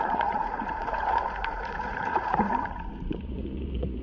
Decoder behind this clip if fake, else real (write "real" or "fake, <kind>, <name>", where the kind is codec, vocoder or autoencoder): fake, vocoder, Vocos